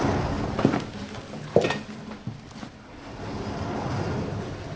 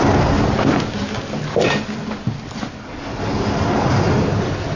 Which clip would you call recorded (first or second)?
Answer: second